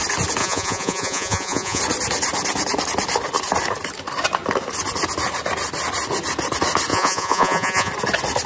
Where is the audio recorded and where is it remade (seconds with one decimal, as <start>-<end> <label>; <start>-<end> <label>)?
0.0-0.4 recorded; 0.4-1.8 remade; 1.8-6.9 recorded; 6.9-7.9 remade; 7.9-8.5 recorded